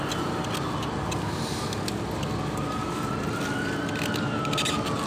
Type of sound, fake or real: real